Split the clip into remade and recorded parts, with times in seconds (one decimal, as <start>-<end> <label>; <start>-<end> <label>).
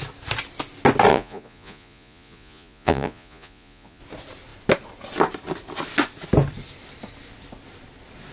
0.0-1.1 recorded; 1.1-4.0 remade; 4.0-8.3 recorded